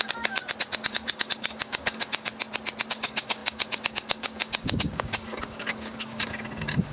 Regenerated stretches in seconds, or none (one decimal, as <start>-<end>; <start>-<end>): 0.0-0.4; 0.9-2.3; 2.9-6.9